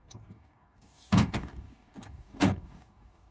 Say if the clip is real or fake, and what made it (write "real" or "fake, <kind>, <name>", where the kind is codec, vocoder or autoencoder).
fake, codec, DAC